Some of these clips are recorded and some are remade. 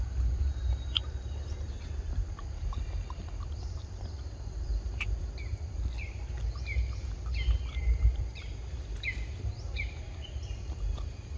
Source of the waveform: remade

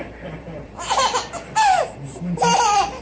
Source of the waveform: remade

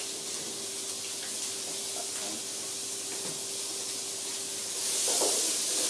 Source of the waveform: recorded